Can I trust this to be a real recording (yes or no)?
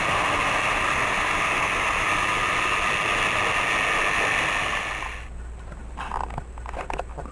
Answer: yes